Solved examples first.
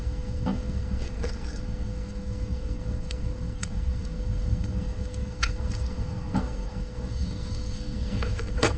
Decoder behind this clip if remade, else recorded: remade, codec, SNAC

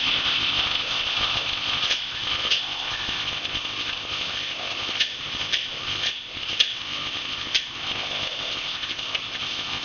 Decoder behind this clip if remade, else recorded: remade, codec, ZipCodec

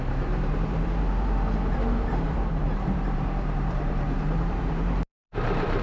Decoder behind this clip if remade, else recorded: remade, vocoder, BigVGAN v2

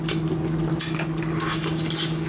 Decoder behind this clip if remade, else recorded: recorded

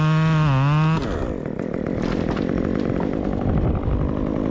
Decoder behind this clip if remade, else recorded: recorded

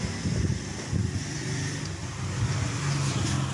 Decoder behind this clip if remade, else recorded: recorded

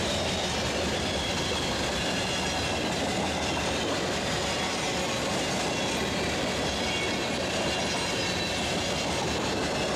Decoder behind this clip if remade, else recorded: recorded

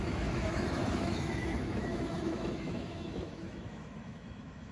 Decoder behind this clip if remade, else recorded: remade, autoencoder, DAC-VAE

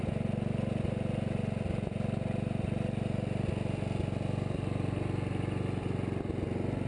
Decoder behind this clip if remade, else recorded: recorded